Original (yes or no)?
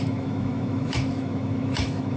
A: no